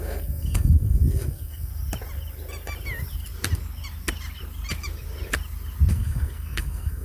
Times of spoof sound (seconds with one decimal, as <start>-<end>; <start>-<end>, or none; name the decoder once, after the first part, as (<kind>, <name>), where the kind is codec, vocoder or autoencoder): 0.0-1.7 (codec, SNAC); 5.9-7.0